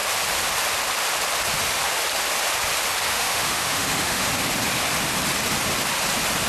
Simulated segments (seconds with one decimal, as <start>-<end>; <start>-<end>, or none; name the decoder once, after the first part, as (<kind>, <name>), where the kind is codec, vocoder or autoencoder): 3.1-4.3 (autoencoder, DAC-VAE)